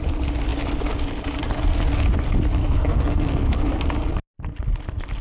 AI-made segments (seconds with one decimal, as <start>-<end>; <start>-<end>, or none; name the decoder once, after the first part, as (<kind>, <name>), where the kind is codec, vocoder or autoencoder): 2.6-3.8 (codec, SNAC)